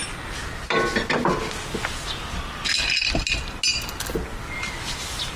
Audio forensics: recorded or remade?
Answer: recorded